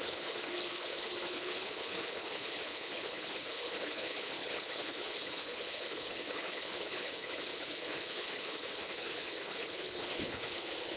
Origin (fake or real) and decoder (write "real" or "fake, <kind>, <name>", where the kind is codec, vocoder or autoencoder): fake, codec, HILCodec